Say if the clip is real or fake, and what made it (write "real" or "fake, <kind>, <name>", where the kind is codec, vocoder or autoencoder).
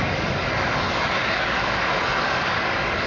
fake, codec, DAC